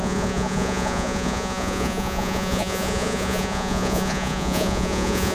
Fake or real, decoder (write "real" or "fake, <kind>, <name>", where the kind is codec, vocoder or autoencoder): fake, vocoder, Vocos